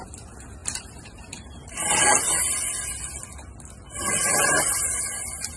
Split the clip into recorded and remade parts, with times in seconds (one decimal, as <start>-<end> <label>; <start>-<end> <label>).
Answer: 0.0-0.6 recorded; 0.6-1.7 remade; 1.7-5.6 recorded